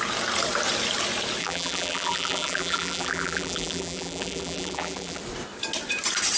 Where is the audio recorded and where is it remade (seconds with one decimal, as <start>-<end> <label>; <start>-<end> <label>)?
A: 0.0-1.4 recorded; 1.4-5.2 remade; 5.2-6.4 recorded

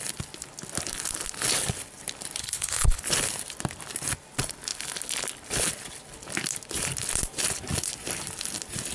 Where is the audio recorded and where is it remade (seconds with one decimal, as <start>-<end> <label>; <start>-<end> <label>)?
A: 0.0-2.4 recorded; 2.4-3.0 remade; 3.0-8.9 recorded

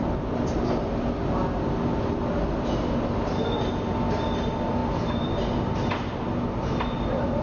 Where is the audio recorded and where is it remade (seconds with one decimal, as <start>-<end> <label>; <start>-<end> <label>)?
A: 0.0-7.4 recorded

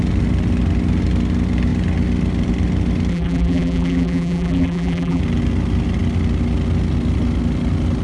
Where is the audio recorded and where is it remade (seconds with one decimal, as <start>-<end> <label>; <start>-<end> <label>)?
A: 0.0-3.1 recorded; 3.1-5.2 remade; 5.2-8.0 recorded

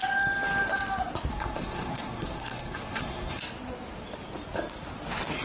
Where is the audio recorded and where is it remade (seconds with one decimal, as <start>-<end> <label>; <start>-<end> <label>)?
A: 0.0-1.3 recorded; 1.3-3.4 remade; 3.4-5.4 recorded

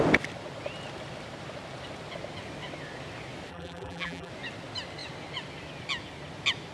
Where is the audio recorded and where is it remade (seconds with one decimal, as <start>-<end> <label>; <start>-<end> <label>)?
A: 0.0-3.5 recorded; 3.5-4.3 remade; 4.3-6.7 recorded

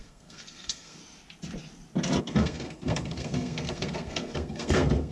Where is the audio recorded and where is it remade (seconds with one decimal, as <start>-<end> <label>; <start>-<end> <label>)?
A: 0.0-1.0 remade; 1.0-2.2 recorded; 2.2-5.1 remade